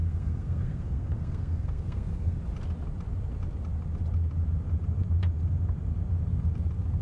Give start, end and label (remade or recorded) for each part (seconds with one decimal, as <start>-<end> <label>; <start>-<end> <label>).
0.0-2.4 remade; 2.4-7.0 recorded